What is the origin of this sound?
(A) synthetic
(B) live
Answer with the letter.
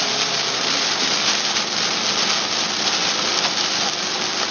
B